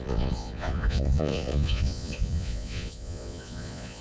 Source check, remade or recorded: remade